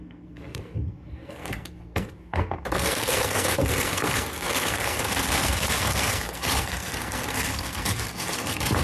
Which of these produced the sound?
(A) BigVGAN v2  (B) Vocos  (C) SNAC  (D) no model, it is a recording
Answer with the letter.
C